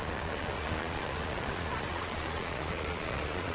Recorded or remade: remade